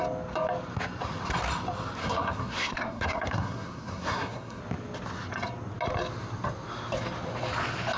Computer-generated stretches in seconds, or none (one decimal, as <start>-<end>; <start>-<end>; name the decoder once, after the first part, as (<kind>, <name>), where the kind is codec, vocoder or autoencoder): 2.0-4.6 (codec, SNAC)